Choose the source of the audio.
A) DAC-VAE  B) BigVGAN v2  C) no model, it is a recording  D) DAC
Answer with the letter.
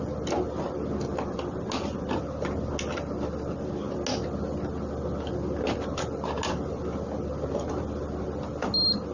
C